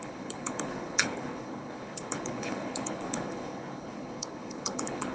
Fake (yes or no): yes